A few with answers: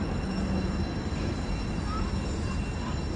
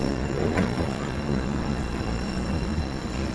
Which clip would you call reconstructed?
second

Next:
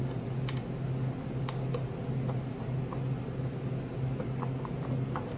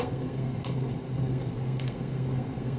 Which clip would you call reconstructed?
second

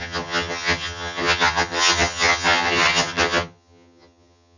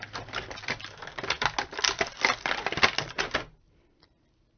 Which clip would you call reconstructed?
first